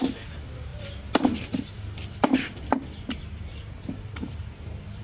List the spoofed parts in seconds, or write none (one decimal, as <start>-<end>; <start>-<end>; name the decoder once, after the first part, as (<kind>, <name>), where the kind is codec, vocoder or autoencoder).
none